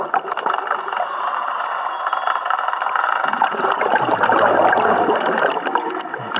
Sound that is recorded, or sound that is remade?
recorded